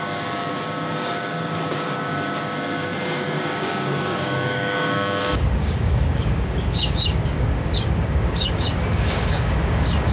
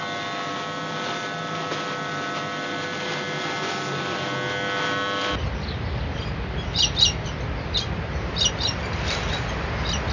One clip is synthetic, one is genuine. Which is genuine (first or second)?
second